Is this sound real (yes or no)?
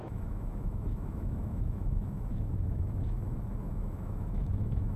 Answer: no